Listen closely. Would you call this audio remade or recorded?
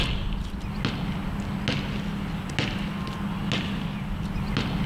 recorded